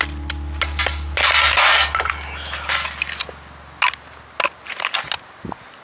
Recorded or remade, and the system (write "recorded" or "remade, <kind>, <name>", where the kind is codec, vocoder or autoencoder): recorded